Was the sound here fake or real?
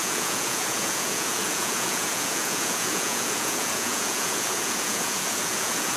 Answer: fake